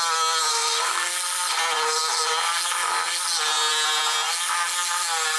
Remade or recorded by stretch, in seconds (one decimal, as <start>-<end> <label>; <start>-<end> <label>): 0.0-0.5 recorded; 0.5-1.1 remade; 1.1-5.4 recorded